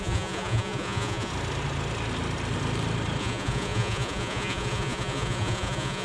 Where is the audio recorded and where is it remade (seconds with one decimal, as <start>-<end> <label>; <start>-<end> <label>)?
0.0-1.3 remade; 1.3-3.2 recorded; 3.2-6.0 remade

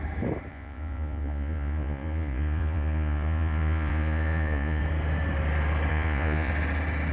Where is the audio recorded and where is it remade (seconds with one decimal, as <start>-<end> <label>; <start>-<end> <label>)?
0.0-0.5 recorded; 0.5-4.8 remade; 4.8-5.9 recorded; 5.9-6.5 remade; 6.5-7.1 recorded

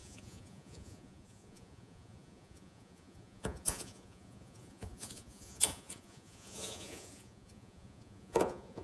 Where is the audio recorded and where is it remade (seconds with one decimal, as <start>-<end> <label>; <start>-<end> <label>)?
0.0-8.8 remade

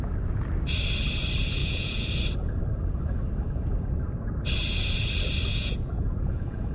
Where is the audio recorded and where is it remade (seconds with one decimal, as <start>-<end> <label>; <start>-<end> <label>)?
0.0-1.6 recorded; 1.6-2.1 remade; 2.1-5.5 recorded; 5.5-6.7 remade

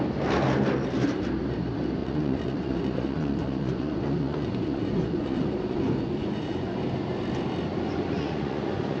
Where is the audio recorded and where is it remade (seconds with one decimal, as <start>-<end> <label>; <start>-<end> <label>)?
0.0-2.0 recorded; 2.0-6.8 remade; 6.8-7.7 recorded; 7.7-9.0 remade

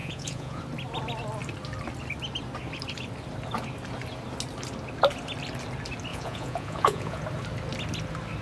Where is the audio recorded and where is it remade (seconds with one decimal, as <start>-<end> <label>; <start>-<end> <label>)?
0.0-0.6 remade; 0.6-6.1 recorded; 6.1-7.2 remade; 7.2-8.4 recorded